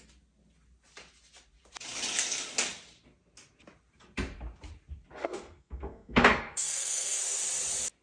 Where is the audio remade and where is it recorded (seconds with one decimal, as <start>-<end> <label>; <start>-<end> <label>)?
0.0-5.2 recorded; 5.2-7.2 remade; 7.2-8.0 recorded